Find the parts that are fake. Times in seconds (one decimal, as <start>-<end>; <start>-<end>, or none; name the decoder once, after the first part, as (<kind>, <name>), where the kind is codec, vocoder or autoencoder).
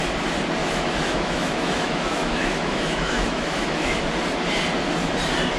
0.6-4.0 (autoencoder, DAC-VAE)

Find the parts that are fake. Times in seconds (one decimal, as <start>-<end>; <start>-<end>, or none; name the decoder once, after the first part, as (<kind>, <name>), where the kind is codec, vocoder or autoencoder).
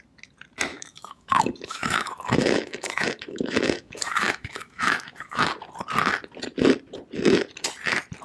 0.7-5.4 (autoencoder, DAC-VAE)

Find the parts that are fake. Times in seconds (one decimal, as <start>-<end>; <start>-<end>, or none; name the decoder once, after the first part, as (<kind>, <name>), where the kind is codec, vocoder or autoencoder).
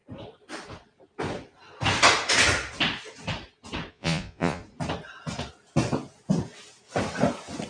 3.9-4.6 (vocoder, Vocos)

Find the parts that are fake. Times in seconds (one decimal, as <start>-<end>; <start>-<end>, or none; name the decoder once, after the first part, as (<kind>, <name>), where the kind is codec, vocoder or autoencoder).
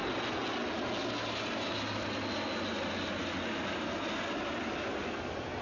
none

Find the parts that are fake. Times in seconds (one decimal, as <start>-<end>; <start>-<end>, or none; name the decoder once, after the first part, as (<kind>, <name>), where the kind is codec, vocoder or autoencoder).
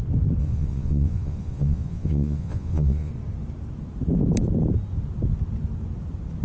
0.4-3.1 (vocoder, Vocos)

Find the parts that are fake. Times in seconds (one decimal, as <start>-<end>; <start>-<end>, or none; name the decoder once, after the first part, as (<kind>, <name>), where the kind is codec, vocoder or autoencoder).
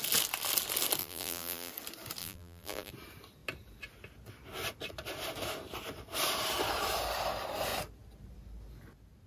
1.0-1.7 (vocoder, BigVGAN v2); 2.2-2.9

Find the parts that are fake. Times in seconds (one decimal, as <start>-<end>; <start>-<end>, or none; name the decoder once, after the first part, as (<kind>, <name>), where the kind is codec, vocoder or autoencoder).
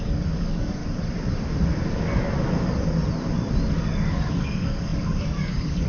0.0-0.8 (codec, DAC); 4.3-5.9